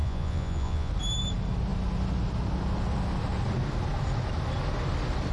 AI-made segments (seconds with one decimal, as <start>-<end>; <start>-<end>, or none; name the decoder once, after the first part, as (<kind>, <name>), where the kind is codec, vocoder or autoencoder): 0.0-0.9 (vocoder, Vocos)